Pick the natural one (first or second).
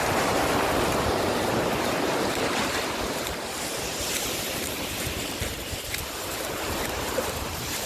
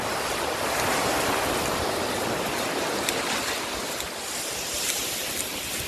second